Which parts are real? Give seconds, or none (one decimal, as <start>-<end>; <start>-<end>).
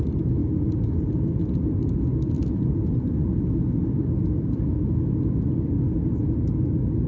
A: 0.0-0.4; 0.9-7.1